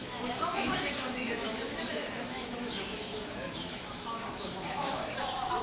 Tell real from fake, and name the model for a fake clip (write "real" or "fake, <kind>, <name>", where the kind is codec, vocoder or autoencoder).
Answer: fake, autoencoder, DAC-VAE